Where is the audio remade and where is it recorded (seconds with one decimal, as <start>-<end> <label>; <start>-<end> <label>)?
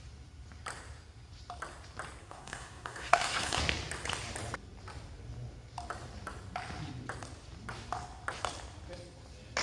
0.0-2.2 recorded; 2.2-3.6 remade; 3.6-9.6 recorded